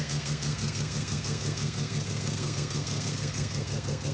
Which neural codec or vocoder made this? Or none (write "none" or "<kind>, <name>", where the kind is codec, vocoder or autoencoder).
codec, SNAC